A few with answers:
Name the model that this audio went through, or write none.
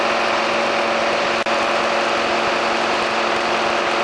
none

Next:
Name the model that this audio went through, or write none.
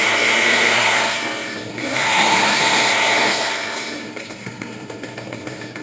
codec, SNAC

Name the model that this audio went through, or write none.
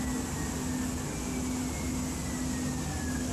none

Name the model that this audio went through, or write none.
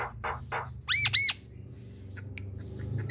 none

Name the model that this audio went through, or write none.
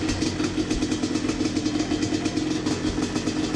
none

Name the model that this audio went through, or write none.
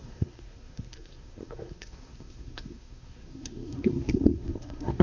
codec, SNAC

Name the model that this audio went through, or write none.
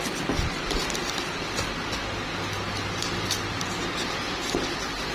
none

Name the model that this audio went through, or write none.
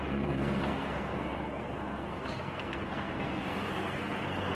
codec, SNAC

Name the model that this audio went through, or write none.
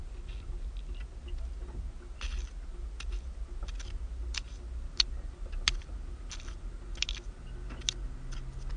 none